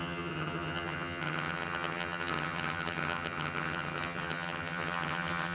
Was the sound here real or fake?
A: fake